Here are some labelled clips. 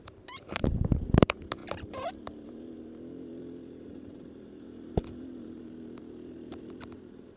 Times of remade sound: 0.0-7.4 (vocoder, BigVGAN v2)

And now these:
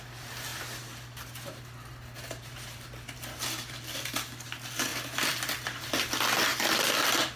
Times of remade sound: 4.9-6.1 (vocoder, BigVGAN v2); 6.5-7.4

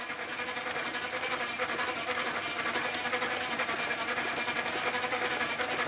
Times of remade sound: none

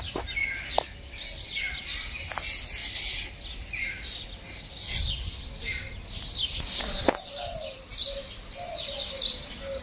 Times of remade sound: none

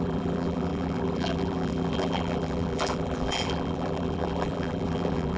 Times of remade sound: 0.0-5.4 (vocoder, BigVGAN v2)

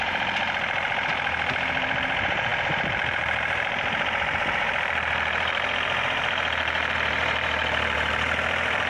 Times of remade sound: 0.0-8.9 (vocoder, BigVGAN v2)